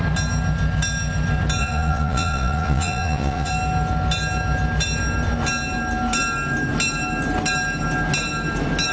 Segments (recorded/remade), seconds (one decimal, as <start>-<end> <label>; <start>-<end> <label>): 0.0-1.6 recorded; 1.6-3.5 remade; 3.5-8.9 recorded